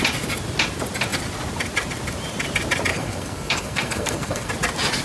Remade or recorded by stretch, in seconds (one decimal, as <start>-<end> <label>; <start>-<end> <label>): 0.0-2.9 recorded; 2.9-4.5 remade; 4.5-5.0 recorded